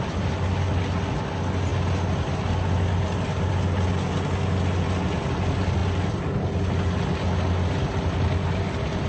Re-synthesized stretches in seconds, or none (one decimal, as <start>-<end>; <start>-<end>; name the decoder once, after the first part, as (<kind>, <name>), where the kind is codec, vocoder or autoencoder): none